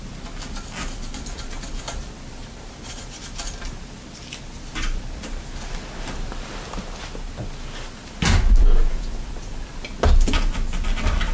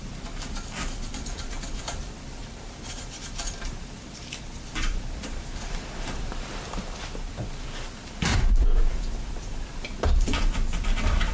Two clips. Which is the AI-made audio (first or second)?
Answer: second